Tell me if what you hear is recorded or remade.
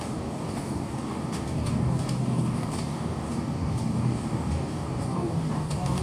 remade